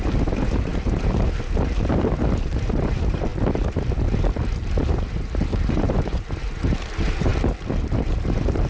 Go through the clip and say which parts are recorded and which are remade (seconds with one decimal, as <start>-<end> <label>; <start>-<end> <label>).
0.0-3.3 remade; 3.3-4.9 recorded; 4.9-7.3 remade; 7.3-8.0 recorded; 8.0-8.7 remade